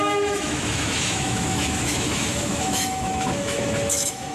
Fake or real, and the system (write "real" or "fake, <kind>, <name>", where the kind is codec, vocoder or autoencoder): fake, autoencoder, DAC-VAE